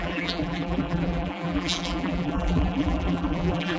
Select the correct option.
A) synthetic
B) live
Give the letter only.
A